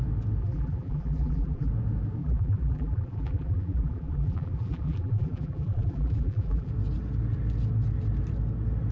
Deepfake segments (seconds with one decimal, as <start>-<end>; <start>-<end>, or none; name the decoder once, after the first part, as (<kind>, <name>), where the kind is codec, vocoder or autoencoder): 0.4-1.7 (vocoder, BigVGAN v2); 2.2-6.7